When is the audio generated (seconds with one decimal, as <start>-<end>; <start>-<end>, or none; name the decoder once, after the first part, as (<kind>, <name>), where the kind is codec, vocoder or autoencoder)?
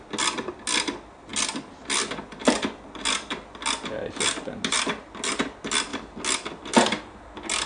none